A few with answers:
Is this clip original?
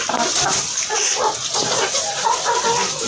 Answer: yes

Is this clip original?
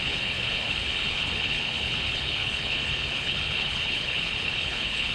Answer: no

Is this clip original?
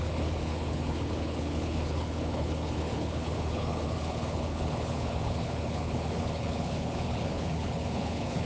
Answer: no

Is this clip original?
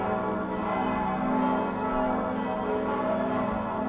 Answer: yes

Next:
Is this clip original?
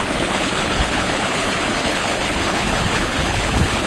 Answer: no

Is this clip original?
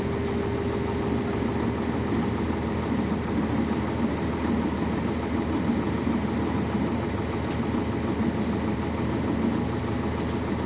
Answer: yes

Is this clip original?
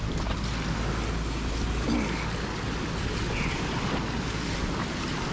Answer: yes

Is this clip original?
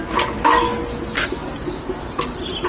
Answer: yes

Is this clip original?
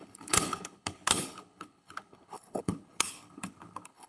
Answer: no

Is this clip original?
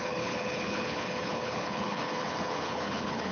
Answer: no